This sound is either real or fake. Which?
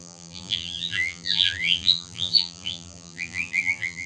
fake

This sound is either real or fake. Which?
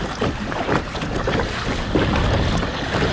real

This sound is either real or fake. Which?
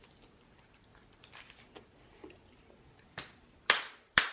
real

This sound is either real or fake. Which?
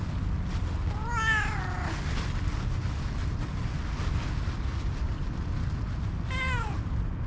real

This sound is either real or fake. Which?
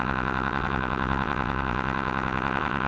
fake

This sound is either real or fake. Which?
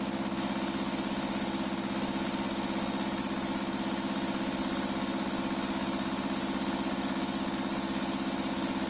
real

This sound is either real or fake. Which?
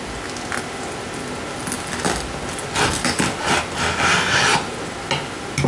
real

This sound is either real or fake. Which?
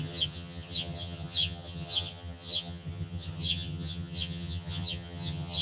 fake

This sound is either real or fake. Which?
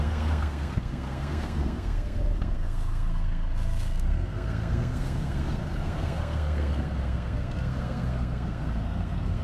fake